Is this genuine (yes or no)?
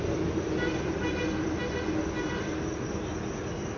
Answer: yes